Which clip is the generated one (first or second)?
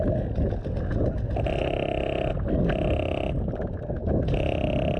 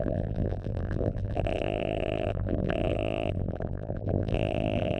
second